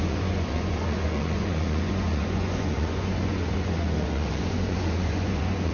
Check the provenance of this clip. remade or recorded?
remade